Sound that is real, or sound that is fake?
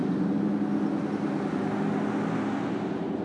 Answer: real